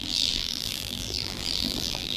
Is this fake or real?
fake